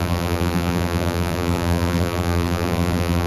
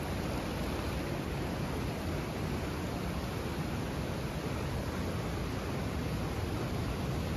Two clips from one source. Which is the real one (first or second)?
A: second